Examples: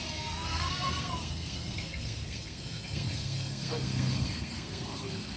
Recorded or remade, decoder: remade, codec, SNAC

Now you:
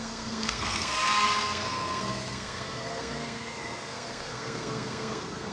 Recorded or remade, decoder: remade, codec, SNAC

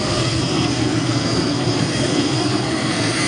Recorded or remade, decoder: remade, codec, SNAC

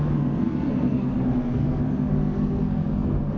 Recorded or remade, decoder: remade, codec, SNAC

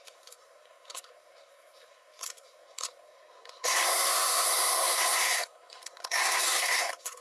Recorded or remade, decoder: remade, codec, SNAC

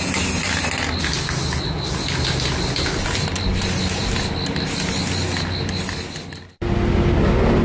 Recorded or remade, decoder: recorded